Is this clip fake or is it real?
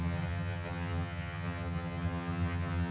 fake